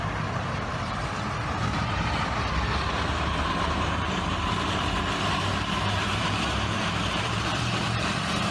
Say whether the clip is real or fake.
fake